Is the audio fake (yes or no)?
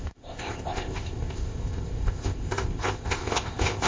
yes